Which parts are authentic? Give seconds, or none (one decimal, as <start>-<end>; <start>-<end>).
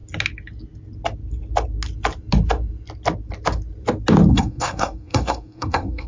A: 0.0-4.3